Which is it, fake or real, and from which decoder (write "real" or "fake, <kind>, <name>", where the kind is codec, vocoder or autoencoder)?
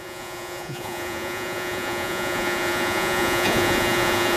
fake, vocoder, Vocos